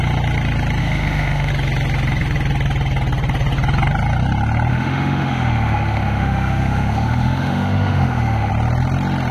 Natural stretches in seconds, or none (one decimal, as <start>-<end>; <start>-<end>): 0.0-0.8; 1.5-4.7; 8.5-9.3